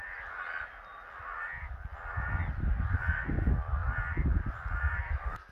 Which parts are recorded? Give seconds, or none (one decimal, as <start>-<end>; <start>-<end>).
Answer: 0.0-5.5